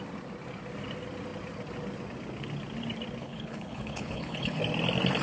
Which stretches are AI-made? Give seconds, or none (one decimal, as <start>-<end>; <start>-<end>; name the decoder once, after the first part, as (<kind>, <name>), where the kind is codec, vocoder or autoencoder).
3.2-4.6 (codec, HILCodec)